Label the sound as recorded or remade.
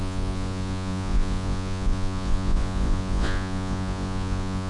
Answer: remade